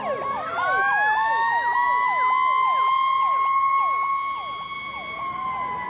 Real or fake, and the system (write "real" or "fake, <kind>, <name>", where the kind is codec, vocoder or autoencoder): real